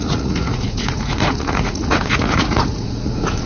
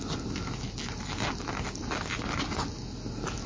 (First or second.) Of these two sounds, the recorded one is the second